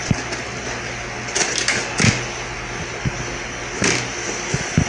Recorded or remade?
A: recorded